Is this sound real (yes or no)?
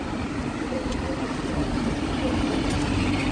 yes